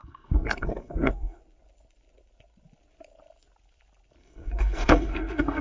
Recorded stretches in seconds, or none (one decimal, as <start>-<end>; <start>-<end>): 1.4-4.2